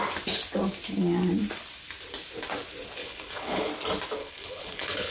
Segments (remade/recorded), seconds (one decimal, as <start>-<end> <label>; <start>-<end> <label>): 0.0-3.0 recorded; 3.0-3.7 remade; 3.7-4.2 recorded; 4.2-5.1 remade